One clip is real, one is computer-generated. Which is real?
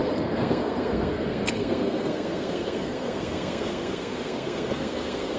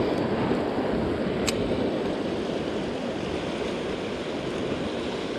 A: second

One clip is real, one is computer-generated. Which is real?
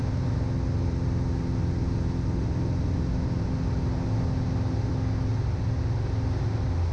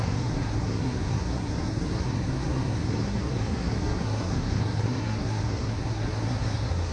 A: first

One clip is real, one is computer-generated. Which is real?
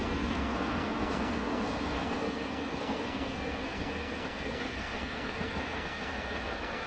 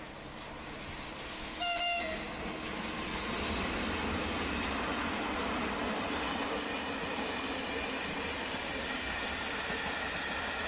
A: second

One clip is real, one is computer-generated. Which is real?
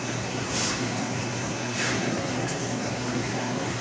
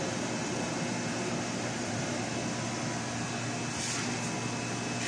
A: second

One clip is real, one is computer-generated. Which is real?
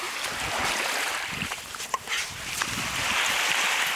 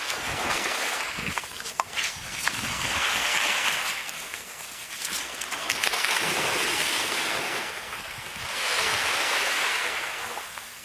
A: first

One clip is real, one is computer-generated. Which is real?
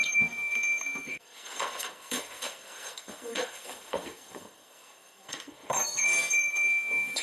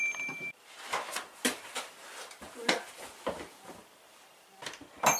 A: second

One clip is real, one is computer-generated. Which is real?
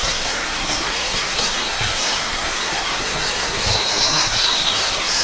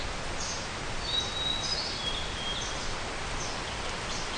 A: second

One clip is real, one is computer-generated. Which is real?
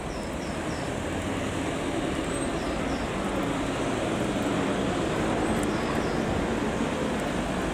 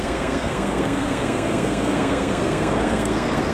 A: first